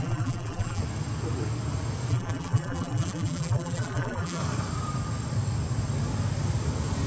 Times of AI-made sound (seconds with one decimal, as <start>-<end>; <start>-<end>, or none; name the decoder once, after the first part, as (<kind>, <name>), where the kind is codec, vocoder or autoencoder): 0.0-0.8 (vocoder, BigVGAN v2); 2.1-4.4